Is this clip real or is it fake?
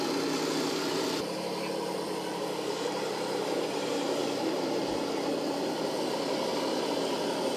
real